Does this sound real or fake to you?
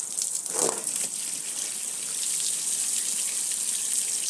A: real